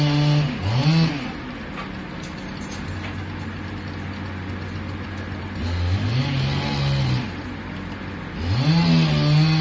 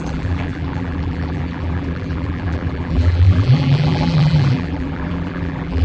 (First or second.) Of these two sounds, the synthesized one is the second